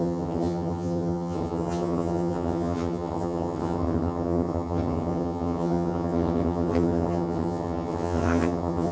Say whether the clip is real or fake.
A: fake